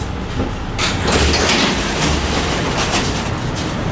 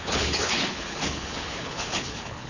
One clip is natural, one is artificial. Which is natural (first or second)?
first